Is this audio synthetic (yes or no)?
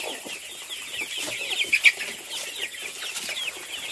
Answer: no